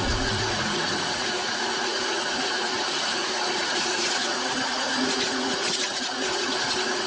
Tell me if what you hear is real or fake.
fake